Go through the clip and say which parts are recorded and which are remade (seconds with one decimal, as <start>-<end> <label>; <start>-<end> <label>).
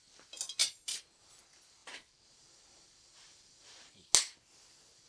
0.0-0.6 recorded; 0.6-1.4 remade; 1.4-1.8 recorded; 1.8-3.9 remade; 3.9-5.1 recorded